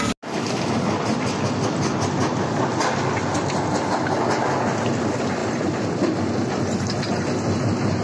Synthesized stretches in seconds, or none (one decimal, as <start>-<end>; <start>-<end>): none